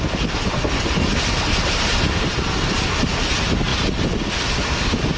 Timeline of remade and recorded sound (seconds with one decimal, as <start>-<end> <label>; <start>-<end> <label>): 0.0-5.2 recorded